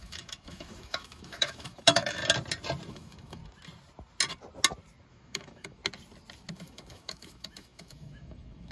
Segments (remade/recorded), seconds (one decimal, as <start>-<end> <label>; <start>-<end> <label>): 0.0-2.2 remade; 2.2-2.9 recorded; 2.9-3.4 remade; 3.4-5.1 recorded; 5.1-5.8 remade; 5.8-6.5 recorded; 6.5-8.7 remade